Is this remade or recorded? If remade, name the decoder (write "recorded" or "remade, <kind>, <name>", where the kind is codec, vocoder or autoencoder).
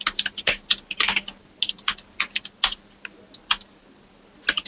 recorded